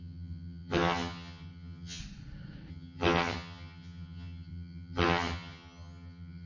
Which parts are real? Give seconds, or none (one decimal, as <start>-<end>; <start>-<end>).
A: 2.0-2.7